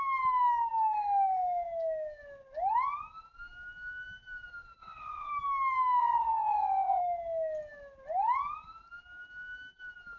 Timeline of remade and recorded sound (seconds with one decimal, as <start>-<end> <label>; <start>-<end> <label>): 0.0-4.8 recorded; 4.8-5.3 remade; 5.3-6.0 recorded; 6.0-7.0 remade; 7.0-10.2 recorded